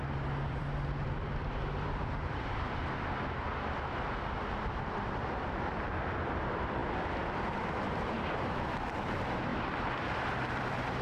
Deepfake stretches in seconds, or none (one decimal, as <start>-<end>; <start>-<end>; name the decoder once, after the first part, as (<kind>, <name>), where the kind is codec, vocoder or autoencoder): 0.0-11.0 (vocoder, BigVGAN v2)